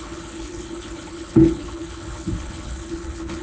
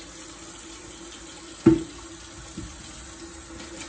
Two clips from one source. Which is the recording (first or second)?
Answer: second